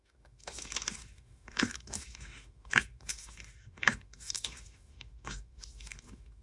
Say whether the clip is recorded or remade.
remade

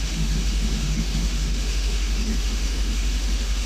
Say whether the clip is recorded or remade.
remade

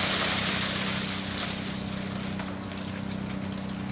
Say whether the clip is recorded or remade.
recorded